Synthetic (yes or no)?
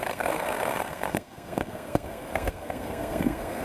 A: yes